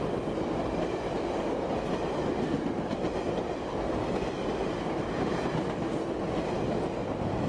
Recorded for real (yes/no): yes